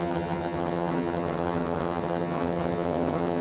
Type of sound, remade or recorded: remade